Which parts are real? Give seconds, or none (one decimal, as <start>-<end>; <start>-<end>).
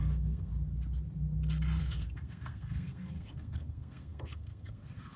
0.5-1.8